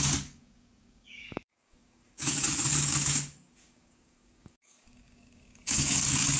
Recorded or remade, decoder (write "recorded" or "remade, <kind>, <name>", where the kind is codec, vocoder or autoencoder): remade, codec, DAC